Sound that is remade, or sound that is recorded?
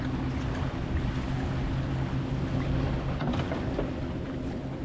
recorded